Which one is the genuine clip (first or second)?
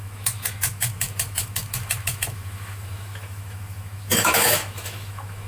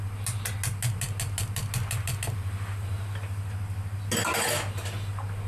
second